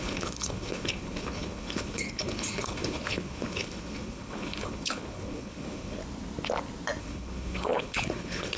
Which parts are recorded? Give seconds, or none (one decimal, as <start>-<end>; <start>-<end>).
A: 6.0-7.0

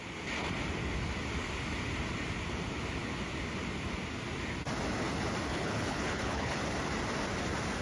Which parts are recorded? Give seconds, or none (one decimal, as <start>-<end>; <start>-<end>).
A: 0.0-5.5; 6.6-7.8

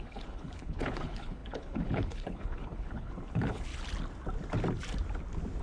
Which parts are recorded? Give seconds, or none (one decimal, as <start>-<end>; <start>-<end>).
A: 3.7-5.6

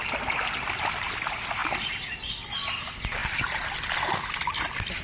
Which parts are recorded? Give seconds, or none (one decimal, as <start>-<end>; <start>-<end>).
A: 0.0-5.0

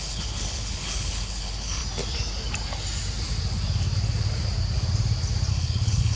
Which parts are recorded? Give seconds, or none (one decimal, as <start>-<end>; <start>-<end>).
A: 1.8-5.5

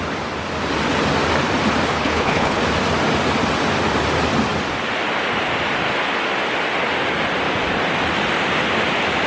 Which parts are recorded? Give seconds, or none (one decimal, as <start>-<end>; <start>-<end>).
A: 0.0-1.9; 2.6-9.3

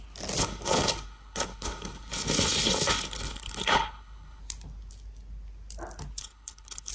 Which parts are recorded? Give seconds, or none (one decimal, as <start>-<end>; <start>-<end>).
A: 0.0-0.4; 4.4-6.2